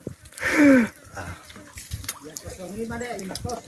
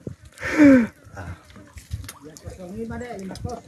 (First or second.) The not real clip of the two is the first